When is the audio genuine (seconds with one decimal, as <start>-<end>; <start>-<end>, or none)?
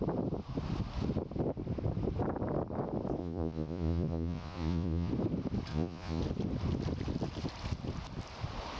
0.0-3.2; 5.1-5.7; 6.2-8.8